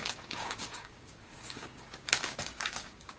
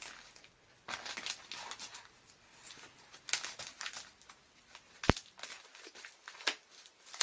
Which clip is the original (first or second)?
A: second